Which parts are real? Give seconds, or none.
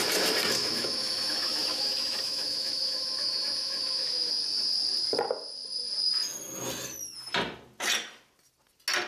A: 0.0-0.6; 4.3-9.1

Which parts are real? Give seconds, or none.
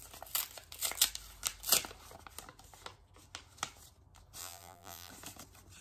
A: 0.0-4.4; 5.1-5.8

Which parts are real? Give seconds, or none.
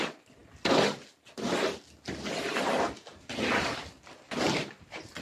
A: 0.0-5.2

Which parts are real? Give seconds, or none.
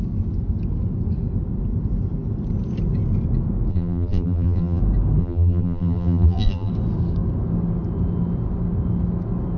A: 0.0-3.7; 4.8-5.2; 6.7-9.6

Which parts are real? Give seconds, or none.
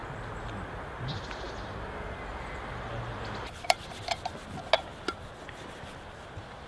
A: 4.0-6.7